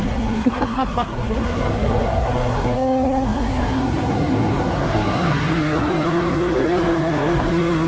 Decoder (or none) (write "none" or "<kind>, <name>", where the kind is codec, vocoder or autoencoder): codec, SNAC